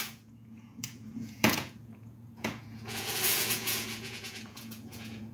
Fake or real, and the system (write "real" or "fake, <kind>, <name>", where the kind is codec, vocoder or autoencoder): fake, vocoder, Vocos